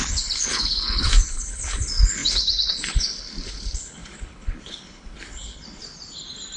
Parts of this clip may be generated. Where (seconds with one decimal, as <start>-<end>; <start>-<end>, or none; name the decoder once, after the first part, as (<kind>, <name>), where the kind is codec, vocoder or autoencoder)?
0.0-5.8 (codec, HILCodec)